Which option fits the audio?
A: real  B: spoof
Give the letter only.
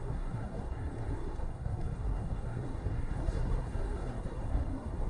B